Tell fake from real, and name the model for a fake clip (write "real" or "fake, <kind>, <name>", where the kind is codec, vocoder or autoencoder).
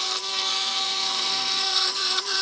fake, codec, SNAC